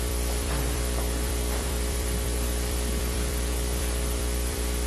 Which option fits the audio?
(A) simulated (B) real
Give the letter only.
A